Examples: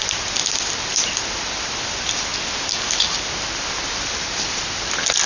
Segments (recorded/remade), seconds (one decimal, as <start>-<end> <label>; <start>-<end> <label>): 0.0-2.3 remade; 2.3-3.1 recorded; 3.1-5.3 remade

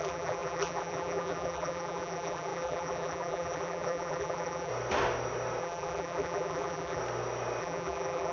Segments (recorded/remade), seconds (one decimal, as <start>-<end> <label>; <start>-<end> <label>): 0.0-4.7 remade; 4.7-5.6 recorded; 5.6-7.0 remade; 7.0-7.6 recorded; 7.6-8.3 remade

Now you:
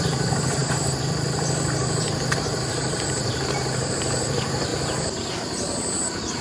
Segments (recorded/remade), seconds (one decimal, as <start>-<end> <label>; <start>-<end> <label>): 0.0-4.7 remade; 4.7-6.0 recorded; 6.0-6.4 remade